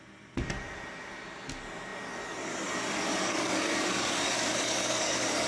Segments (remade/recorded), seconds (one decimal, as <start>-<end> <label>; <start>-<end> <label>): 0.0-3.1 recorded; 3.1-5.5 remade